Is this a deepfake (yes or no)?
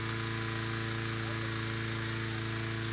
no